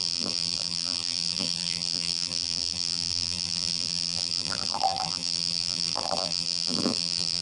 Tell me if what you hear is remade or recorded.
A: remade